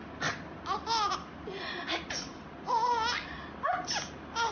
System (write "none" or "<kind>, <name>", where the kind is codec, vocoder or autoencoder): none